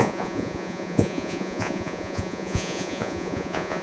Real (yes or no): no